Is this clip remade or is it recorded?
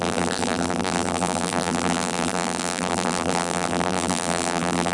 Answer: remade